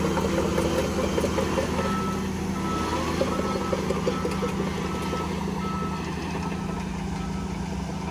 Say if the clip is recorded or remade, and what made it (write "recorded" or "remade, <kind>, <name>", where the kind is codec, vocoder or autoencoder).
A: recorded